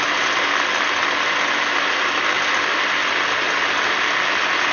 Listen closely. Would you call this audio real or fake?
real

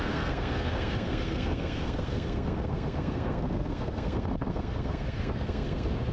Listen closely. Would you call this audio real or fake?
fake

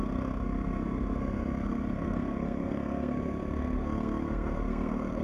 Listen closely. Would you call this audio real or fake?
fake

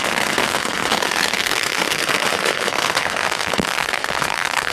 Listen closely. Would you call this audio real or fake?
fake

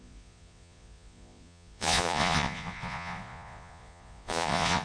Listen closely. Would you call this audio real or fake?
fake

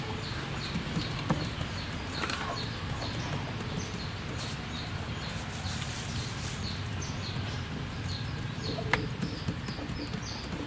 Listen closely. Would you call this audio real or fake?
real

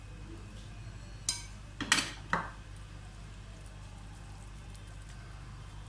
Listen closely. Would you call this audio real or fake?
real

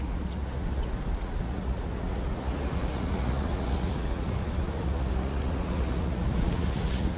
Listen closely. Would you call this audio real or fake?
fake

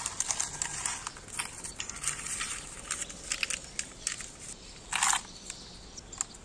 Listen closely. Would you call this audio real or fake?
real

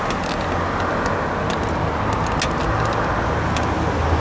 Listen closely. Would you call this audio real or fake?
real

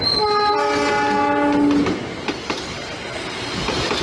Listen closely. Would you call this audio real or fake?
real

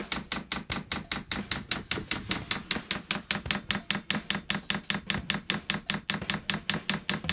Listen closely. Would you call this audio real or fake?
real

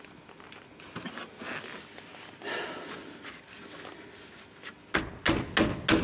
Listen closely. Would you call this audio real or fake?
real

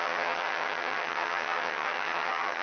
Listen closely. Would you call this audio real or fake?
fake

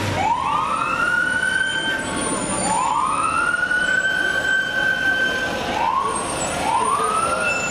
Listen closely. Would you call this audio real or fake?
real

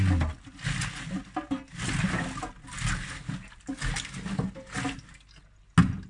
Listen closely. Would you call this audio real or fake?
real